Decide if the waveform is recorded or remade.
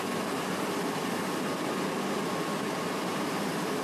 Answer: recorded